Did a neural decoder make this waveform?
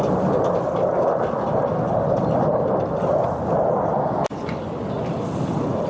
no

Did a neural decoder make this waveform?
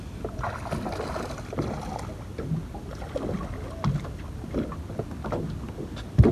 no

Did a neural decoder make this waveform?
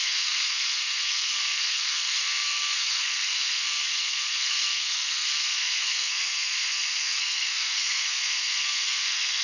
yes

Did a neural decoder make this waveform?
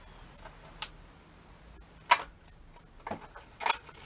no